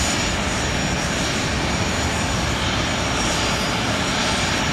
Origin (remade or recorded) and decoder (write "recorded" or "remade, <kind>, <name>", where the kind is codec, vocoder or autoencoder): recorded